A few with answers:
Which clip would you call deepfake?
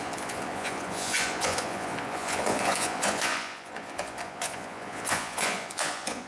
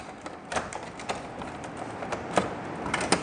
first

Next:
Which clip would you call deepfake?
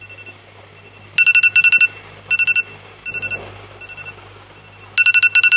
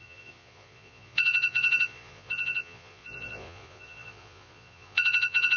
second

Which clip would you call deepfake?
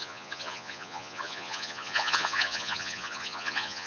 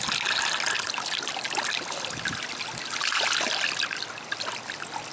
first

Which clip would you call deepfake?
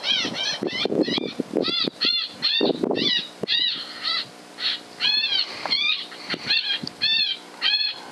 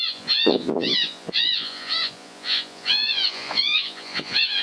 second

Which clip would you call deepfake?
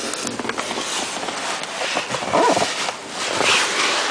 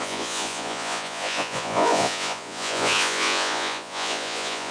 second